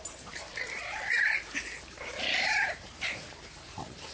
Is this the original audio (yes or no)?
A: no